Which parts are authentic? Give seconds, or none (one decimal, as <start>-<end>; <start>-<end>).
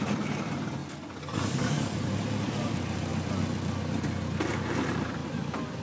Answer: 0.8-1.7; 3.1-4.5; 5.2-5.8